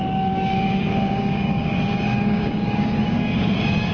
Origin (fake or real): fake